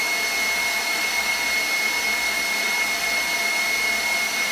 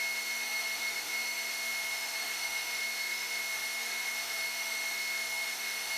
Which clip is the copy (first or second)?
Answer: second